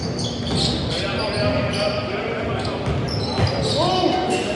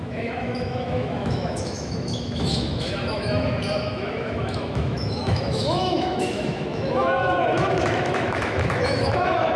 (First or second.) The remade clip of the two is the second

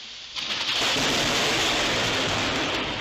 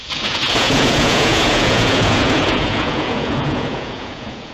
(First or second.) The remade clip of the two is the second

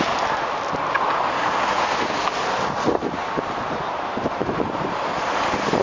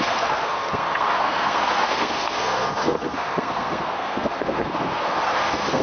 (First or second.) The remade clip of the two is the second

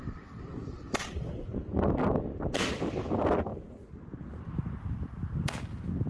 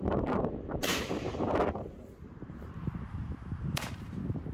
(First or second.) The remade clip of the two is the second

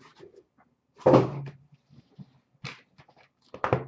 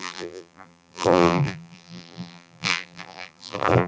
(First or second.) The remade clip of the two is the second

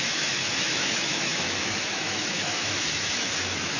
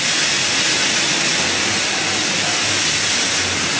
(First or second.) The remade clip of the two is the first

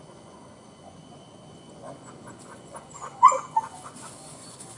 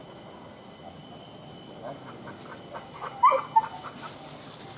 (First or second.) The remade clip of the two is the first